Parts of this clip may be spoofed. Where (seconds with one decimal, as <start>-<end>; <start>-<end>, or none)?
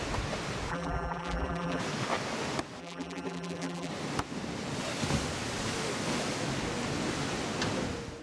0.7-1.8; 2.8-3.9